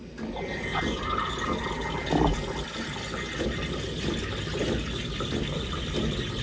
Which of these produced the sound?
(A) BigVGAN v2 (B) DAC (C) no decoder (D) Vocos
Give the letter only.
C